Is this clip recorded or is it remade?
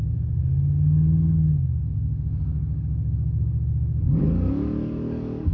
remade